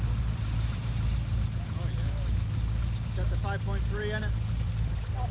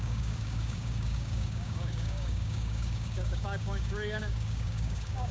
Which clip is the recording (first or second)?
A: first